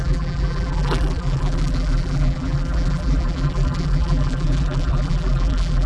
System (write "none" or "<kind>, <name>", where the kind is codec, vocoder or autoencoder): vocoder, BigVGAN v2